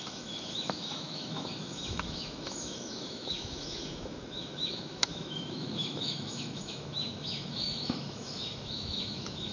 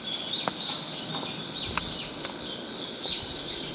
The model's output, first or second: first